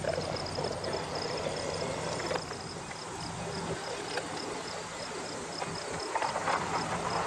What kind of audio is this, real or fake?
real